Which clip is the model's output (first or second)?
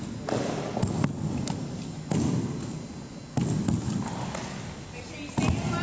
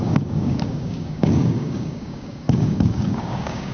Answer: second